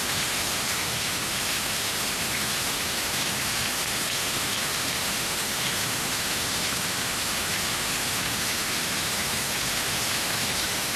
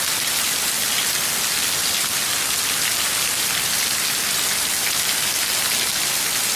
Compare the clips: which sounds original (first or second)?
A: second